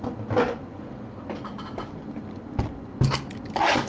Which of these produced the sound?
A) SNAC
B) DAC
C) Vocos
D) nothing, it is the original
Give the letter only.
D